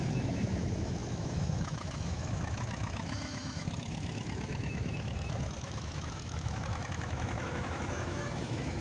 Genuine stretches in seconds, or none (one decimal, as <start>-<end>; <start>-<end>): none